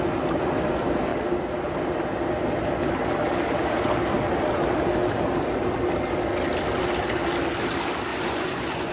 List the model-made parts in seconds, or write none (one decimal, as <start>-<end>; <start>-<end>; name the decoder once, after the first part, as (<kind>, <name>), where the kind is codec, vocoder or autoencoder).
8.1-8.9 (vocoder, Vocos)